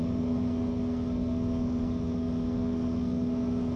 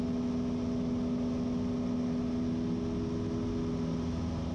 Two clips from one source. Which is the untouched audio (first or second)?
second